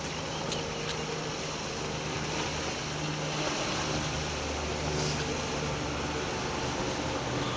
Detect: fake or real real